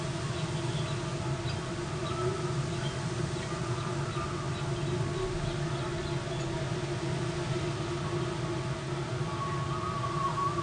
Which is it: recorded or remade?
recorded